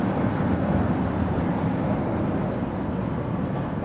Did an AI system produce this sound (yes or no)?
no